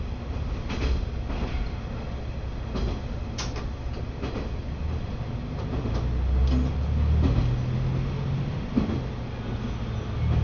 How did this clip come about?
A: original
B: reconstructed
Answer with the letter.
A